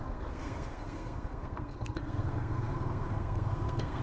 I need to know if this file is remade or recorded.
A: remade